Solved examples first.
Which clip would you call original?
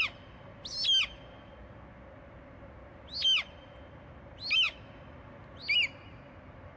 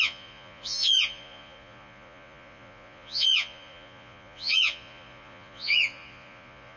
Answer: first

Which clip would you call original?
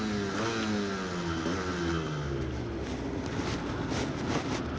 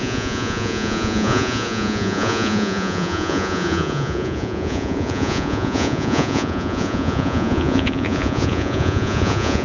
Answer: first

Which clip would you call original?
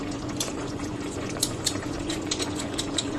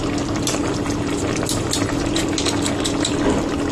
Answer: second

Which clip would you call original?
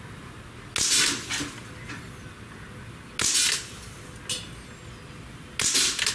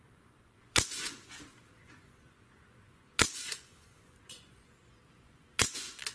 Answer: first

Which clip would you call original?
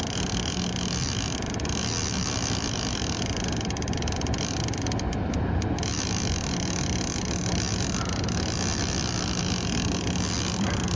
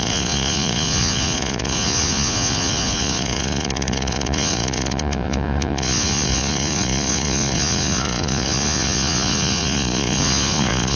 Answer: first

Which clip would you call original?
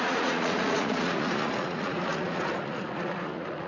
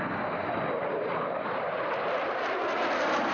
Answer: second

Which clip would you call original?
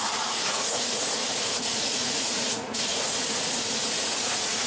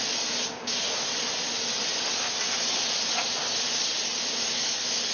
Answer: second